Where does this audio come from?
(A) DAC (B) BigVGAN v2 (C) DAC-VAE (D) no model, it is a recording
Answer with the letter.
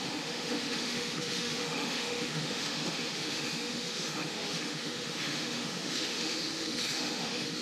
C